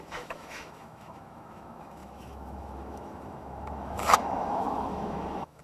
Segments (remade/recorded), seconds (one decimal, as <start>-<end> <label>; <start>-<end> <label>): 0.0-5.6 remade